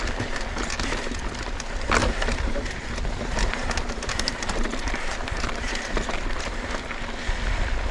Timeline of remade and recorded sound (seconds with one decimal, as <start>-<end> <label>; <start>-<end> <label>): 0.0-2.0 recorded; 2.0-6.7 remade; 6.7-7.9 recorded